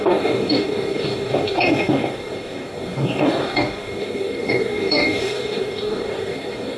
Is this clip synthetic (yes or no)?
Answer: yes